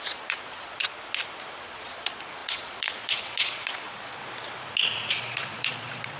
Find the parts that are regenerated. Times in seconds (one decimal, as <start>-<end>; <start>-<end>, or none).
0.0-0.9; 1.6-4.2; 5.1-6.2